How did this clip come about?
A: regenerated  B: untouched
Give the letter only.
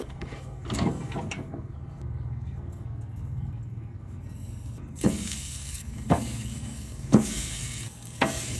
A